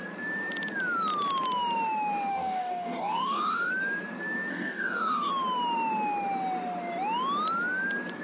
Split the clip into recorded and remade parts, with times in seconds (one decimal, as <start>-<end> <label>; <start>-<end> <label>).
0.0-2.3 recorded; 2.3-3.7 remade; 3.7-4.5 recorded; 4.5-5.3 remade; 5.3-8.2 recorded